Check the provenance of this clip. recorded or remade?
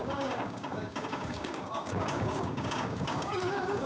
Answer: remade